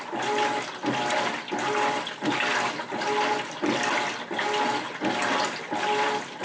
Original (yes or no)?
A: yes